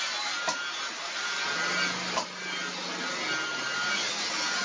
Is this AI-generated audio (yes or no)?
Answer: no